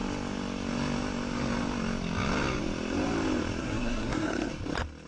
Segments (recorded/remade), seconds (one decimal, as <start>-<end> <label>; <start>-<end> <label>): 0.0-3.6 recorded; 3.6-4.5 remade; 4.5-5.1 recorded